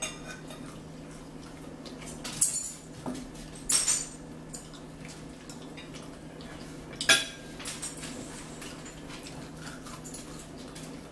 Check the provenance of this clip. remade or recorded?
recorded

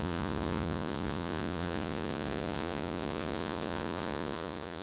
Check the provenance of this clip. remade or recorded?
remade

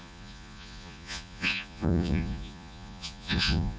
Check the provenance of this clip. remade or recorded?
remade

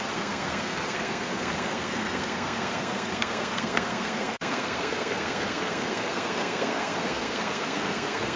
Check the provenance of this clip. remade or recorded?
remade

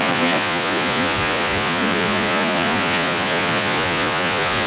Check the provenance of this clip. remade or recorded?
remade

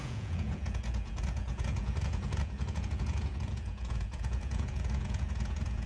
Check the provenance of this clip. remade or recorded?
remade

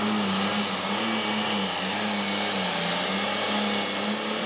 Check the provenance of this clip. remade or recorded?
recorded